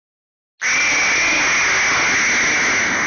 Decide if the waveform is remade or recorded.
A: recorded